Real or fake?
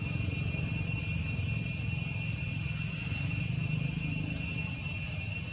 real